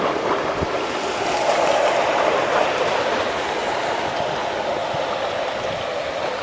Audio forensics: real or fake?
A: real